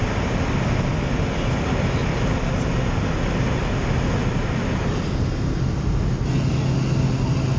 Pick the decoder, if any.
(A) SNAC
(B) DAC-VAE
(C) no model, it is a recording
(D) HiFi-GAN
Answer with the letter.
C